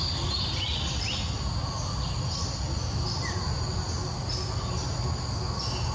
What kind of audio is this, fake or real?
real